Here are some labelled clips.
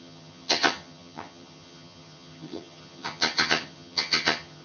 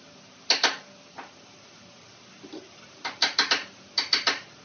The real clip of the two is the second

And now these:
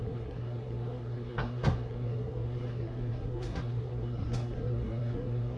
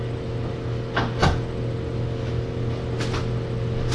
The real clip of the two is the second